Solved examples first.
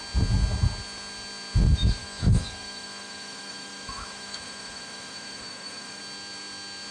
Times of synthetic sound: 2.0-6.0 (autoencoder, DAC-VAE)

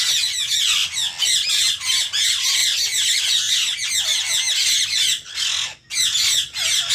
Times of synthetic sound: none

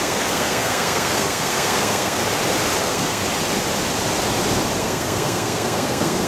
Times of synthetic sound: 0.0-2.2 (codec, SNAC); 2.8-3.2; 4.8-6.3